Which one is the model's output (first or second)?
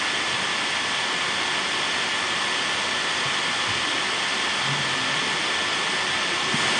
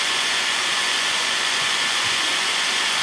second